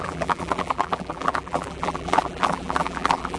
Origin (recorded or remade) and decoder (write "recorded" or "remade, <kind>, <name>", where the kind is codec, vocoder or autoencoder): remade, vocoder, BigVGAN v2